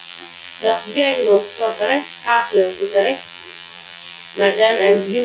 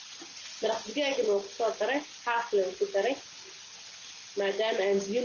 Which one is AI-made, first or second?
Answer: first